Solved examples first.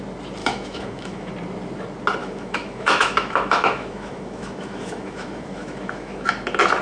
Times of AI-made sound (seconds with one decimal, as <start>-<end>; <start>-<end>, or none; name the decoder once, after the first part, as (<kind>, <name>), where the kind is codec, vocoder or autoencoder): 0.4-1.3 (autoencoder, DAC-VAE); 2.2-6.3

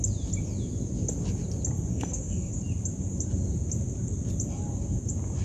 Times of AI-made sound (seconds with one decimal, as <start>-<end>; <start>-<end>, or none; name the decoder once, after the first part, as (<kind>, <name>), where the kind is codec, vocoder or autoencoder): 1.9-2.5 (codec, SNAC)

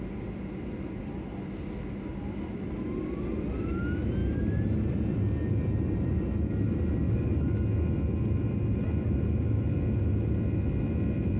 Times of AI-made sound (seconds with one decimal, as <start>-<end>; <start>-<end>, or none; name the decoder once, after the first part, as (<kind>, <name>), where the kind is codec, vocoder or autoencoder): none